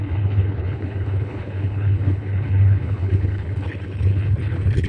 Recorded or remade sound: remade